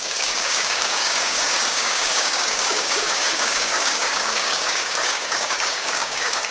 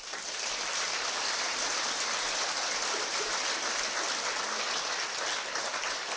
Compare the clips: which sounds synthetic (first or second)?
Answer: first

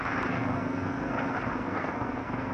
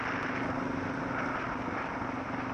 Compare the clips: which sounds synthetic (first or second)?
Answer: first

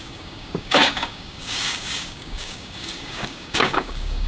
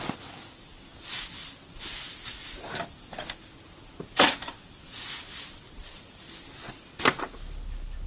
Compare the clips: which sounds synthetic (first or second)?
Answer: first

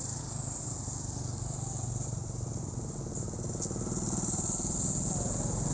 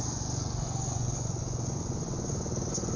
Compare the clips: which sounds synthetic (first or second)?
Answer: second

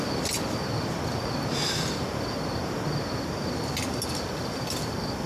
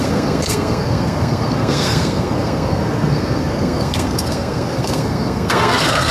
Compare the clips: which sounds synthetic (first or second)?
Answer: second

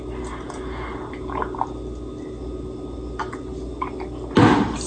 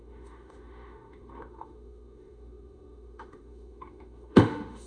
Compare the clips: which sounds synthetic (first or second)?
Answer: second